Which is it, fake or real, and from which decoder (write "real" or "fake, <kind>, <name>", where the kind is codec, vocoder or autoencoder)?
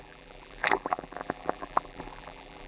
fake, vocoder, BigVGAN v2